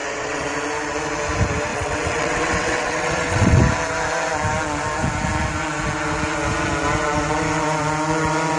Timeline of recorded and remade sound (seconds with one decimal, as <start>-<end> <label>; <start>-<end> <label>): 0.0-0.5 remade; 0.5-1.7 recorded; 1.7-3.6 remade; 3.6-8.6 recorded